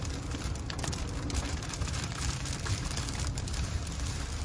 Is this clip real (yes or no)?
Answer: no